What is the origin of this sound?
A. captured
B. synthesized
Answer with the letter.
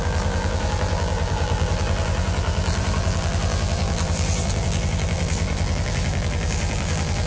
B